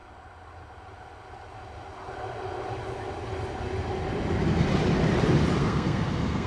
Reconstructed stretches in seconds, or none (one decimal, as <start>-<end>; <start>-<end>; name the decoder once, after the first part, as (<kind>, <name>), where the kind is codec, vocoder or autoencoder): 5.6-6.5 (codec, SNAC)